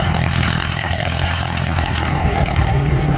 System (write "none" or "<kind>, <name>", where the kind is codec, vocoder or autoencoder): codec, SNAC